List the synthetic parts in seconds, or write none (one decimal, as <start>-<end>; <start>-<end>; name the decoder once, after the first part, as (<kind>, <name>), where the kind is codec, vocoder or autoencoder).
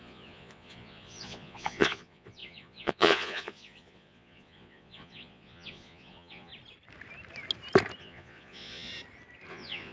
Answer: 0.0-6.5 (vocoder, Vocos); 8.0-8.9; 9.5-9.9